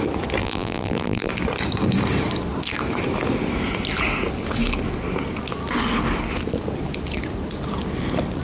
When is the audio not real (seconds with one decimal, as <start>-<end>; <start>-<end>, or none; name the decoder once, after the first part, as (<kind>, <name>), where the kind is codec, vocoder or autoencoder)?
0.4-1.3 (vocoder, BigVGAN v2)